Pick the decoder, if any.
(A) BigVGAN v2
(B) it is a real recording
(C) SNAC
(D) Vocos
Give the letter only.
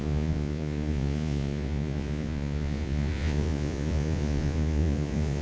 D